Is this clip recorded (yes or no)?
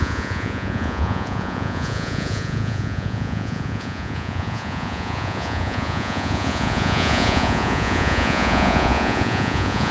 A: no